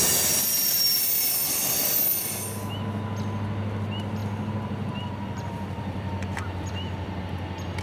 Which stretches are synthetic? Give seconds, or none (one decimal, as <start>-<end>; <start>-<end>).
4.2-7.2